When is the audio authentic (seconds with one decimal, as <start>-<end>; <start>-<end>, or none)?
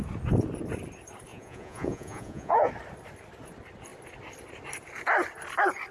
0.0-1.3; 2.7-5.9